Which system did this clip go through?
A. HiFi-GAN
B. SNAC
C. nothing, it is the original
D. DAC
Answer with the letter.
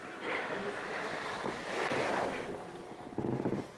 C